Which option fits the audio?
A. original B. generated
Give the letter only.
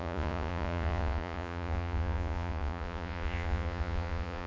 B